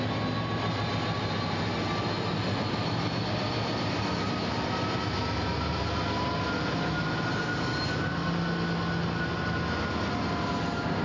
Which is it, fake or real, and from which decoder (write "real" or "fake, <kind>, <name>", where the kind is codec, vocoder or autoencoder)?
real